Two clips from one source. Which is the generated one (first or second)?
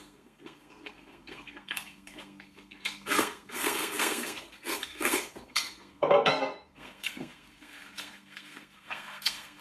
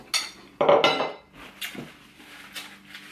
first